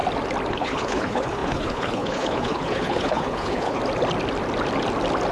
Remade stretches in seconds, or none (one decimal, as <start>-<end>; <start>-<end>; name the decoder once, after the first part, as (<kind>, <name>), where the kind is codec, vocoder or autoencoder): 0.5-3.8 (codec, HILCodec)